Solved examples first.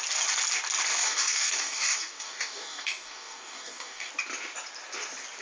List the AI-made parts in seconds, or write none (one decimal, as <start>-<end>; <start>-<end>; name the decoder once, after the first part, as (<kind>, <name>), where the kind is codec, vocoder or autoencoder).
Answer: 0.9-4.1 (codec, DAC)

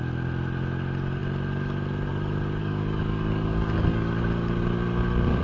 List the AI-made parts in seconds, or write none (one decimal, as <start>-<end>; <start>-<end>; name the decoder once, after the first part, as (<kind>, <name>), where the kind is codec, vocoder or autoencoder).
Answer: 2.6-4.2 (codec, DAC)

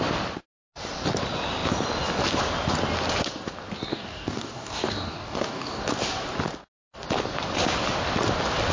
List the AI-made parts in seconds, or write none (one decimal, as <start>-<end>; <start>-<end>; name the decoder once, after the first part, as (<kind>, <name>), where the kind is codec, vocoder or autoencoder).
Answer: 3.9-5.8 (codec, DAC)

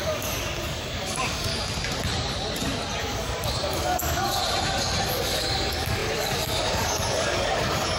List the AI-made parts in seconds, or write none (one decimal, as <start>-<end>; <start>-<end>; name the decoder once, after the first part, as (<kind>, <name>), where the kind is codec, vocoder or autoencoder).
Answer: 0.0-1.5 (codec, DAC); 3.0-4.4; 5.1-8.0